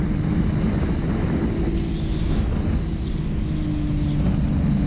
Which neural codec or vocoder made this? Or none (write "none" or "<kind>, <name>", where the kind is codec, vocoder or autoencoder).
none